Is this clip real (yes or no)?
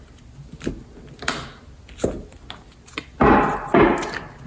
yes